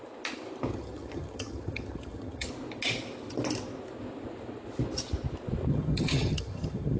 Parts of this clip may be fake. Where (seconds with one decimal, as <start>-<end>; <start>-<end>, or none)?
0.7-2.5; 5.7-7.0